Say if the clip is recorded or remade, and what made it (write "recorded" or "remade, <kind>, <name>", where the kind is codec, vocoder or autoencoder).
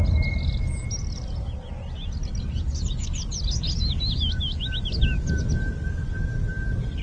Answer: recorded